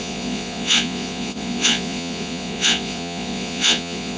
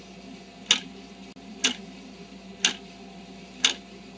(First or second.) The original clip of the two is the second